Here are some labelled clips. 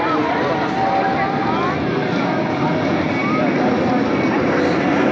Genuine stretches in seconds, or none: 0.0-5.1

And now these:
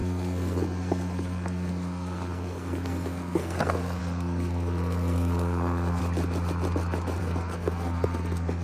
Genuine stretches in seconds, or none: 6.0-7.2

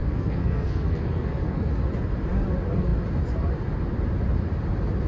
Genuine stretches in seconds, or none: 1.7-5.1